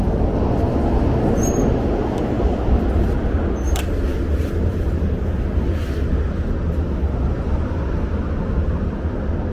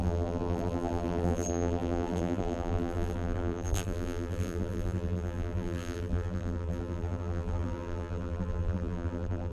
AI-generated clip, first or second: second